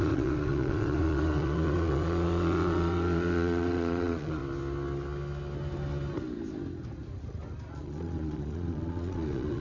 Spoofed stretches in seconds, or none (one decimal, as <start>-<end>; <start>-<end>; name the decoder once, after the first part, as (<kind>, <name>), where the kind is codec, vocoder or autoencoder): 0.0-4.4 (vocoder, Vocos); 7.7-9.6